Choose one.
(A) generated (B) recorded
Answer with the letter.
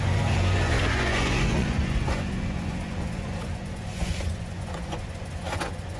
A